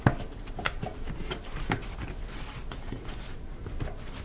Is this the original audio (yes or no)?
yes